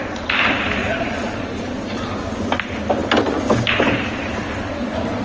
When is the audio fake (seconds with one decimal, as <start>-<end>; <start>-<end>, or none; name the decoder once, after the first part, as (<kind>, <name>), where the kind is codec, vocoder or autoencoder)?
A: 0.8-2.1 (vocoder, Vocos)